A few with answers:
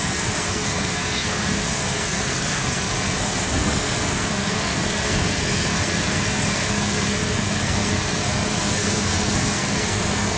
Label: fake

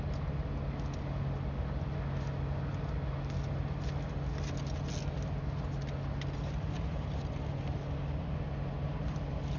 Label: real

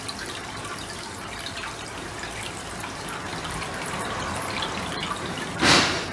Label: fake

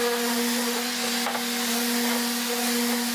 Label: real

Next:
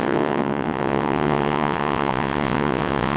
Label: fake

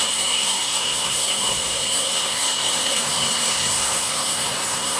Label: fake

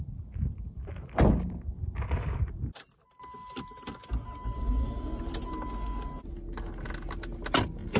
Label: real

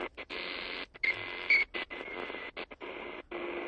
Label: real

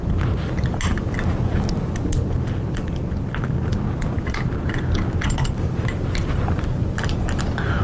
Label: real